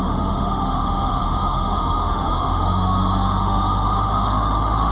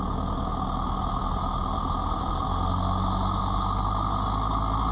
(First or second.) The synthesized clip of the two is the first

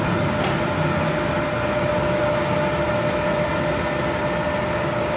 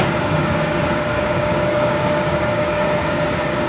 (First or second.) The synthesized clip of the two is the second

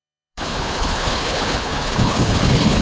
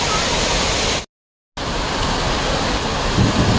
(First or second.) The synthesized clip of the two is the first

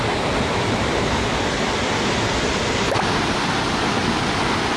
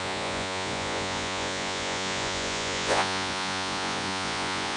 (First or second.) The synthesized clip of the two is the second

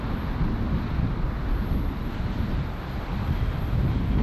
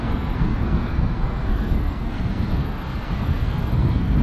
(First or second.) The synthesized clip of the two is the second